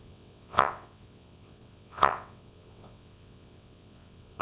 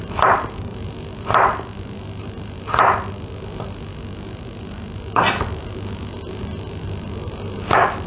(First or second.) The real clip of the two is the second